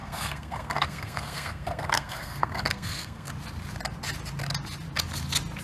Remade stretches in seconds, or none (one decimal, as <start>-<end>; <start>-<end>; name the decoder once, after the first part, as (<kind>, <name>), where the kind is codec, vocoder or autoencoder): 0.0-3.3 (codec, SNAC)